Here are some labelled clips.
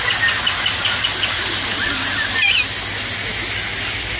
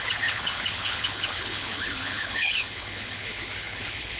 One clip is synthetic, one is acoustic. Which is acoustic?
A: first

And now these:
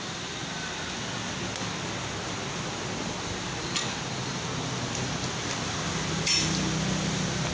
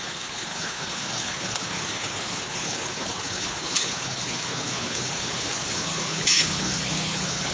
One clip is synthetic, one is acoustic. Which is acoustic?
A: first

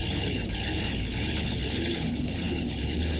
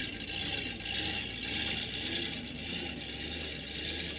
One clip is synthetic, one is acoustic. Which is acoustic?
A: second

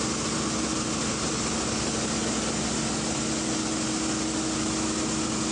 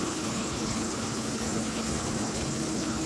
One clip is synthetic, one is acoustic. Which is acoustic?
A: first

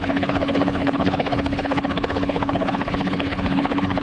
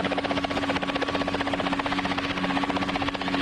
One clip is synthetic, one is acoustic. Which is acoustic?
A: second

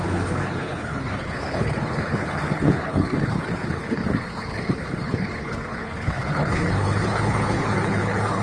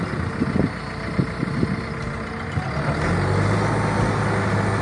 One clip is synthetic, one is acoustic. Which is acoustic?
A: second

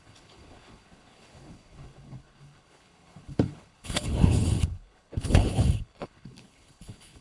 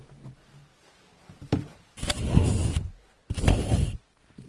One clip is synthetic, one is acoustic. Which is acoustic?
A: second